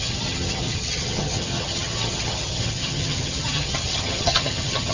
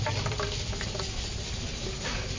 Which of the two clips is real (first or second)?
second